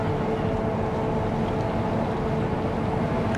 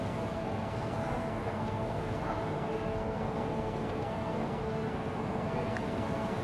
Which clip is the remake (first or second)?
second